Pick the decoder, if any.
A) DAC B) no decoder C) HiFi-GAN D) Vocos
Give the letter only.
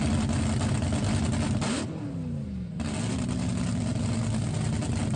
B